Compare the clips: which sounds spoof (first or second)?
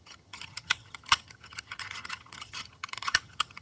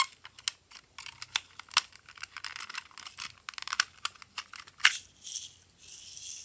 first